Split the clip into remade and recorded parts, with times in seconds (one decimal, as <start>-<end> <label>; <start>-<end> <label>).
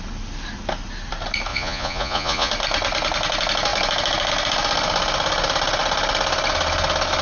0.0-1.5 recorded; 1.5-2.5 remade; 2.5-7.2 recorded